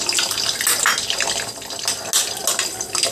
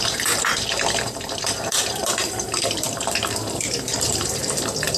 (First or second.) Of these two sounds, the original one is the first